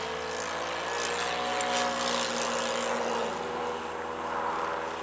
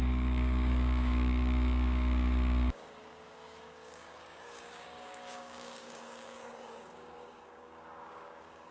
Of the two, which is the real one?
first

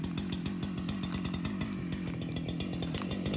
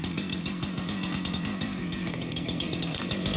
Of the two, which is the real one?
first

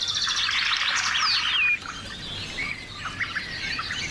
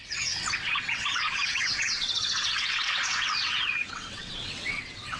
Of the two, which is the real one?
first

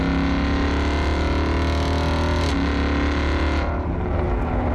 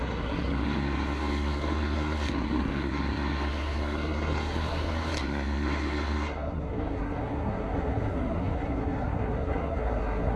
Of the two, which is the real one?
first